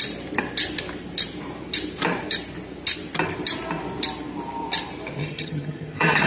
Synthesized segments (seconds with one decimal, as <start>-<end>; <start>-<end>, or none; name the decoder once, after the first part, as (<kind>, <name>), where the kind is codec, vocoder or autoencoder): 5.2-6.3 (vocoder, HiFi-GAN)